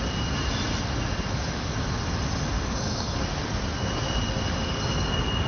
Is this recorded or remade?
recorded